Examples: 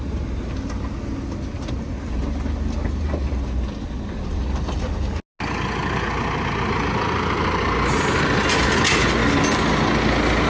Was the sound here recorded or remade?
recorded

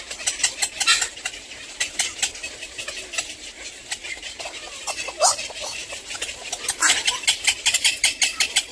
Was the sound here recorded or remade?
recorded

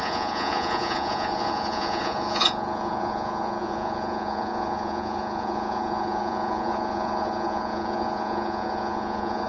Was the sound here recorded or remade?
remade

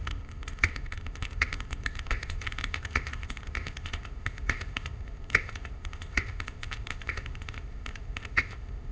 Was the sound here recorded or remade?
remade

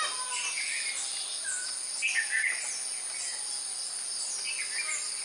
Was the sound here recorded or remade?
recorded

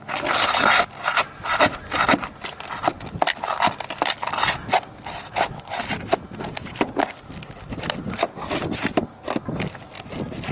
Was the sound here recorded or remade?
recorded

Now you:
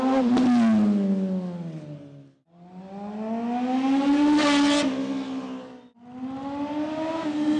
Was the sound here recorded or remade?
recorded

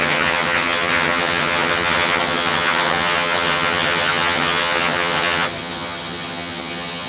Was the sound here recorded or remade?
remade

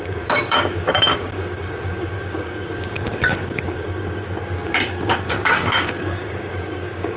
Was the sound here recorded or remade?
remade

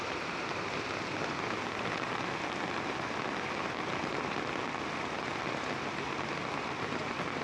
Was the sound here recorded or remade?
recorded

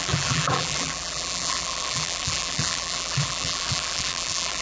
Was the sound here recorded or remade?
remade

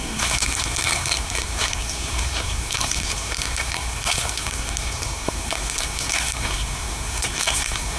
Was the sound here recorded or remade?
remade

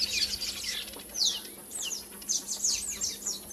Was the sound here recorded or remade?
recorded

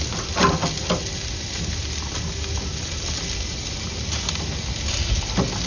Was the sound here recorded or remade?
recorded